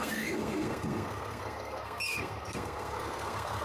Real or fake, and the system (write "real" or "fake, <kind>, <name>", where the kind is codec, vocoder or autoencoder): fake, codec, SNAC